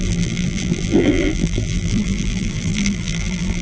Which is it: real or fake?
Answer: fake